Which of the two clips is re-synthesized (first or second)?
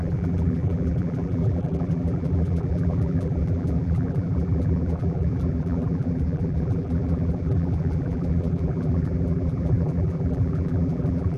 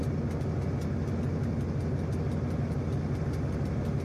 first